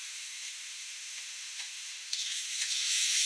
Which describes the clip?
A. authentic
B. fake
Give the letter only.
B